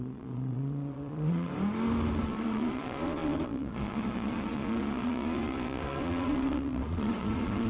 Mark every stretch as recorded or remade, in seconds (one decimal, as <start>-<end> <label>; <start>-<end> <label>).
0.0-1.5 remade; 1.5-2.2 recorded; 2.2-7.7 remade